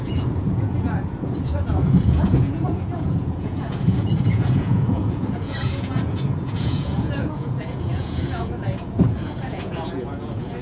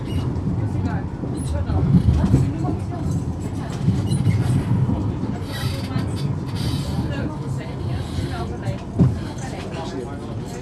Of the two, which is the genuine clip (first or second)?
second